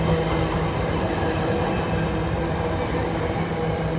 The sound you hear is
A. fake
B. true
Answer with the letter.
B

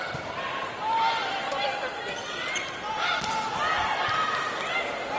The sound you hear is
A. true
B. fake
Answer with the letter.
A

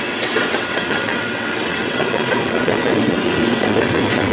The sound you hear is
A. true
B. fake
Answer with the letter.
B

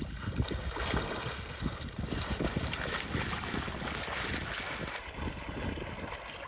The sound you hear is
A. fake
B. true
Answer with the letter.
B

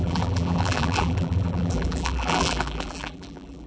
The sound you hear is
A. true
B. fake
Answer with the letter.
B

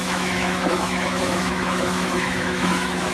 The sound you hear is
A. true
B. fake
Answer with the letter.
B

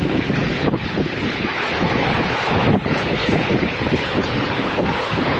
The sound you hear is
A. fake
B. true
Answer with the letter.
A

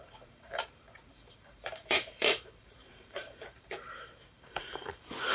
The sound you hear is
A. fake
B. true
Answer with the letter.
A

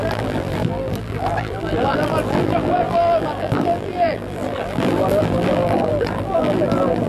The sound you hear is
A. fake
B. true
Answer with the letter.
A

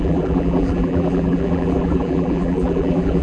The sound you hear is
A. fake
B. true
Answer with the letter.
A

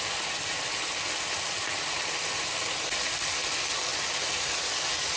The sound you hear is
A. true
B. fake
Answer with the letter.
A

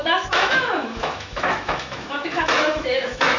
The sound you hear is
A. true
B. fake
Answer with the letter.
B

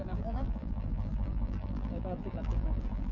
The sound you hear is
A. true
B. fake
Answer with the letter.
B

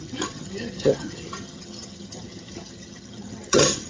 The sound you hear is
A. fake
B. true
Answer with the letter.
A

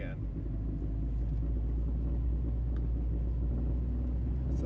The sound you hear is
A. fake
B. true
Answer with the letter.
B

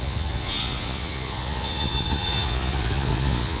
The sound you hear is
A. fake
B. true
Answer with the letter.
A